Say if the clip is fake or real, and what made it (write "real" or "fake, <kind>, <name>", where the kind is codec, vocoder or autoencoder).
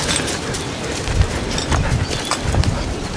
fake, vocoder, BigVGAN v2